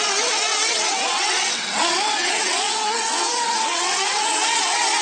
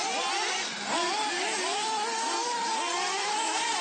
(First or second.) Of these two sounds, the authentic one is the second